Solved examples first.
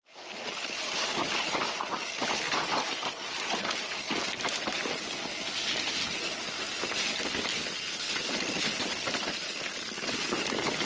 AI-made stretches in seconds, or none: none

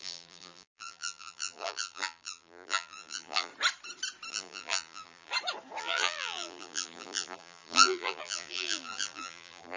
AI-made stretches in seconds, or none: 0.0-3.5; 4.3-5.3; 5.8-9.8

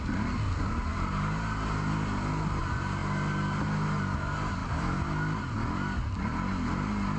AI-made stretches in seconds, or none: none

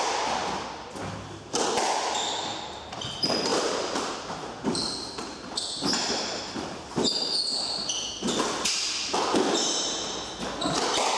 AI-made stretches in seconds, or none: 3.5-6.6

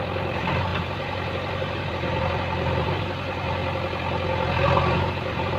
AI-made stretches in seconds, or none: 0.0-3.6; 4.5-5.6

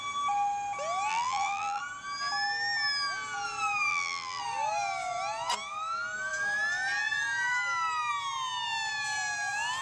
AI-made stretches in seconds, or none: 1.1-1.8; 3.9-4.4

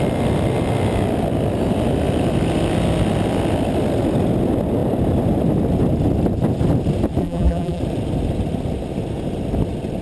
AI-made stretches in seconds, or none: 7.2-7.8